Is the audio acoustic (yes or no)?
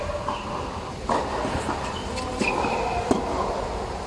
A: yes